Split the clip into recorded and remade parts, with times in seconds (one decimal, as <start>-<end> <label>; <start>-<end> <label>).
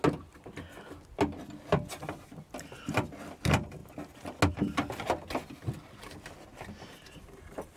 0.0-7.8 recorded